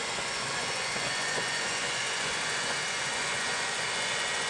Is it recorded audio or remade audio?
remade